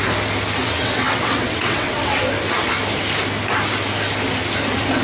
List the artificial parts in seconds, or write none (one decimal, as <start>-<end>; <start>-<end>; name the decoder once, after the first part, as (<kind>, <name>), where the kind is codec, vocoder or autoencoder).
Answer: 0.6-2.2 (vocoder, WaveNeXt)